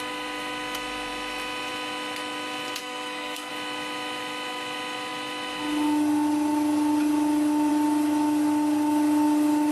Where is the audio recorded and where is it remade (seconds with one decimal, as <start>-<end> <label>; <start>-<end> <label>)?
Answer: 0.0-2.8 recorded; 2.8-3.5 remade; 3.5-9.7 recorded